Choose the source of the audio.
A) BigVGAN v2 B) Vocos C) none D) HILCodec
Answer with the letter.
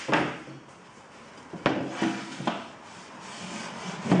C